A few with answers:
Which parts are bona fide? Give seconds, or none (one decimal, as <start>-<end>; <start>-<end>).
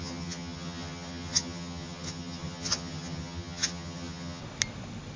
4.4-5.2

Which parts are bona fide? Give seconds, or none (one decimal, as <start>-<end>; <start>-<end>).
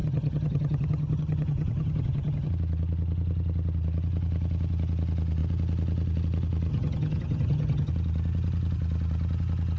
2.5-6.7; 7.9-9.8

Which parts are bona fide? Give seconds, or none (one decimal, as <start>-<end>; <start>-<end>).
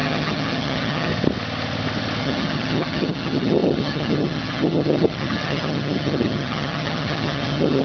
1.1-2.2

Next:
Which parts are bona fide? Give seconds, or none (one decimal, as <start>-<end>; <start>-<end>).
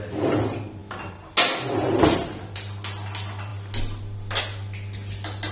0.0-5.5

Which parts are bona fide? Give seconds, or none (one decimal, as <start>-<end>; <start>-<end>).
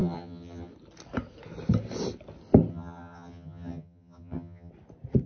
0.7-2.7; 4.7-5.3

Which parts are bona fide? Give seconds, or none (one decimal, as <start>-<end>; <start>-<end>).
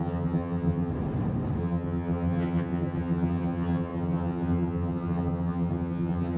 0.9-1.6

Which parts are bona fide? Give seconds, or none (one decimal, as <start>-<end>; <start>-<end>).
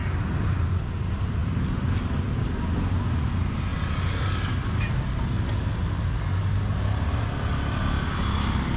0.0-8.8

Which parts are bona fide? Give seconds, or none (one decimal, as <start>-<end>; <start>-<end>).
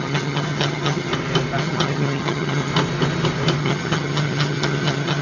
1.1-1.6; 2.7-3.6